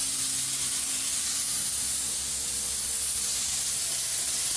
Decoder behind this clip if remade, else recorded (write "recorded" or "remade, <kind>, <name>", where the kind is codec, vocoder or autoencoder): recorded